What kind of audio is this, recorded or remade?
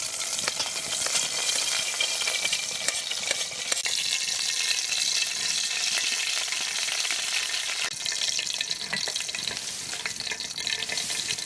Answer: recorded